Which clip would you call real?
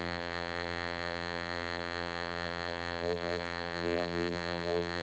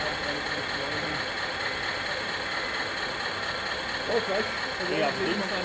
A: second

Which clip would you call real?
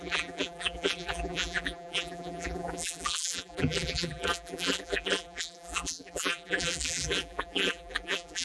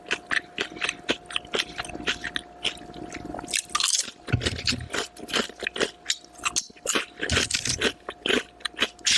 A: second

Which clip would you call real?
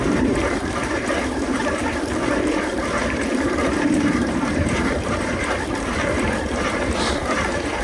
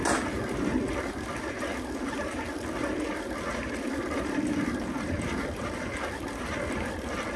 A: second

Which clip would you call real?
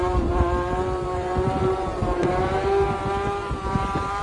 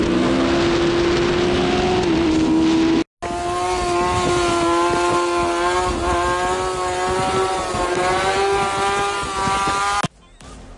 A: second